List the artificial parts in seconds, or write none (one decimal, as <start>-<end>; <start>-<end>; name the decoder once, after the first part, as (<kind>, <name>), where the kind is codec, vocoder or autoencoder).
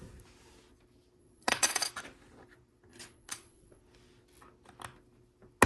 1.2-1.9 (vocoder, Vocos); 2.9-3.8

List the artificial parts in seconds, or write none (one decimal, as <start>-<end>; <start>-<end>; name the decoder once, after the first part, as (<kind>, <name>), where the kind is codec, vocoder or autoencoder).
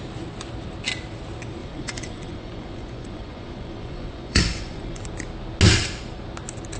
1.6-5.0 (vocoder, Vocos)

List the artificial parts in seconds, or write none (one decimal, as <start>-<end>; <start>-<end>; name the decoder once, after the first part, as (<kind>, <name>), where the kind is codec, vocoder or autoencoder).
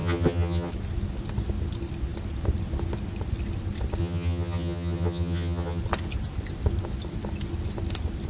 0.0-0.7 (vocoder, HiFi-GAN); 4.0-5.8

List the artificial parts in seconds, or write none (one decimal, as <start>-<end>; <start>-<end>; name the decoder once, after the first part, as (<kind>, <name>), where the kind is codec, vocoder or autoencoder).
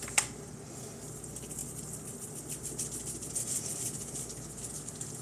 none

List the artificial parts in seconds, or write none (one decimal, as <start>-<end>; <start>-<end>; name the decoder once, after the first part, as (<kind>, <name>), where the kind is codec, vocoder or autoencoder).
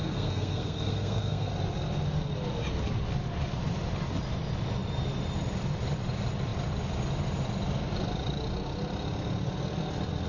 0.0-1.5 (codec, SNAC)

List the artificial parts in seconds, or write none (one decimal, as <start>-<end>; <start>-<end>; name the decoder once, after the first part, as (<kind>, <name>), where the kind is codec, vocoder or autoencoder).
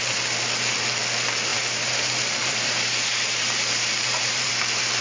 1.5-4.5 (vocoder, BigVGAN v2)